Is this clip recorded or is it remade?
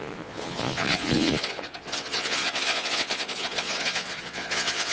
remade